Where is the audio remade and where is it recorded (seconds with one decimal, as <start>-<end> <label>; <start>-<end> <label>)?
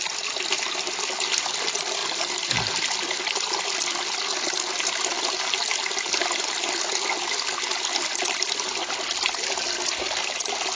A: 0.0-10.8 recorded